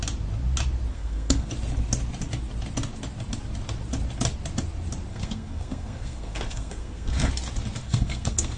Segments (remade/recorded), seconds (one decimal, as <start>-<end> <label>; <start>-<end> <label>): 0.0-0.9 recorded; 0.9-1.5 remade; 1.5-5.1 recorded; 5.1-7.3 remade; 7.3-7.8 recorded; 7.8-8.6 remade